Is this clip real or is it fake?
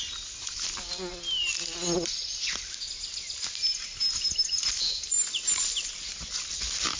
real